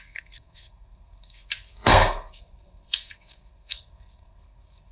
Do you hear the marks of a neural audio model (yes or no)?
yes